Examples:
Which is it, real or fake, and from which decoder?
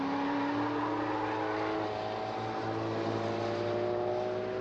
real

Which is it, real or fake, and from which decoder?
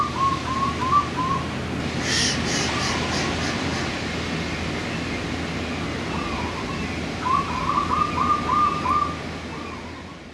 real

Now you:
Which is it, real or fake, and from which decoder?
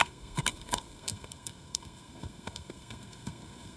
fake, codec, SNAC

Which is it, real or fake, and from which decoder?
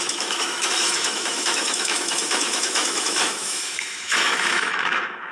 fake, autoencoder, DAC-VAE